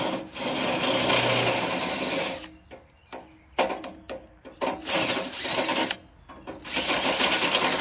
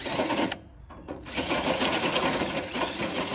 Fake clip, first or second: second